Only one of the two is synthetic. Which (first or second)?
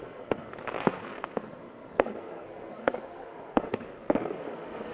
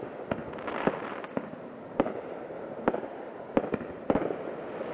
first